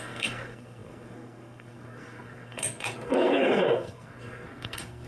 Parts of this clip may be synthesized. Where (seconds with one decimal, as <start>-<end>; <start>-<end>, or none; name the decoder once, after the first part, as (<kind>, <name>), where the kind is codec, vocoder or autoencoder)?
0.0-5.1 (codec, SNAC)